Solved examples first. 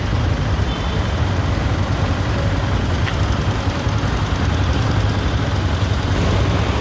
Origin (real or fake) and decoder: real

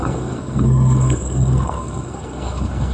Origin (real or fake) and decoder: fake, codec, SNAC